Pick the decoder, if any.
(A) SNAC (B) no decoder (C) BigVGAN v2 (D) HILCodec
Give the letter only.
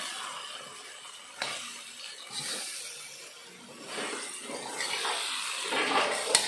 B